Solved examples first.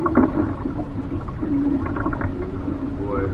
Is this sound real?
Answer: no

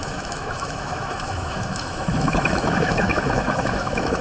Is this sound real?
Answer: no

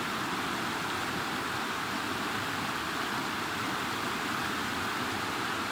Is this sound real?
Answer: yes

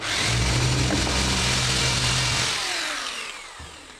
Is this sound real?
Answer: yes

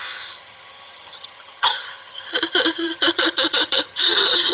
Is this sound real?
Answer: no